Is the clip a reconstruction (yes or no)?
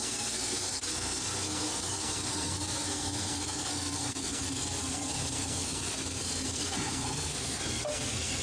yes